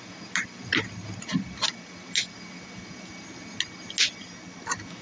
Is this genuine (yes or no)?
yes